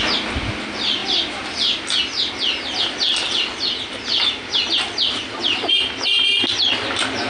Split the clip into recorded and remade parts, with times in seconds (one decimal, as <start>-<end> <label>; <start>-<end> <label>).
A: 0.0-7.3 recorded